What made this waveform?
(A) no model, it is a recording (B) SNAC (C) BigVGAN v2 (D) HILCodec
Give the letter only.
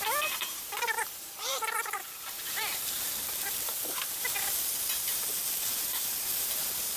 C